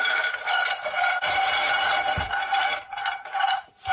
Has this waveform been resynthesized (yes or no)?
yes